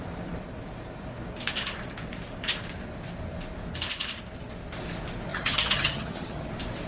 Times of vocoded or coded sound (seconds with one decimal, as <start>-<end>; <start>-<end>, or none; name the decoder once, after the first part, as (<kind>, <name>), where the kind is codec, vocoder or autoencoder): 5.3-6.5 (vocoder, HiFi-GAN)